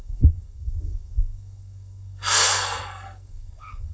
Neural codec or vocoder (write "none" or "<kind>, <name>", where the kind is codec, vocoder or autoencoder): codec, SNAC